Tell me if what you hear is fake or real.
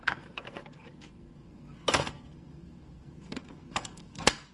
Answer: fake